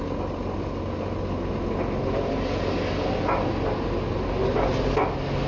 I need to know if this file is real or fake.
real